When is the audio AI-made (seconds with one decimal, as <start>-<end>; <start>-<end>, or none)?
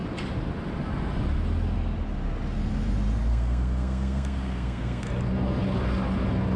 3.3-5.1